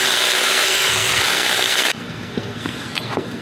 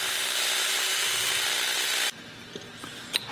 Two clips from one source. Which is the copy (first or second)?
first